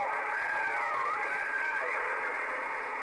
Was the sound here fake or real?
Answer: fake